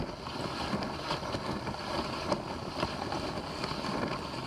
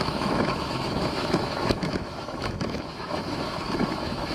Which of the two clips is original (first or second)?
first